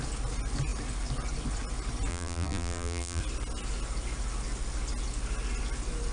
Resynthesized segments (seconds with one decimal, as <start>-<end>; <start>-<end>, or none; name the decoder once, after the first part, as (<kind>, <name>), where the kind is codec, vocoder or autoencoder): 2.1-3.2 (vocoder, BigVGAN v2)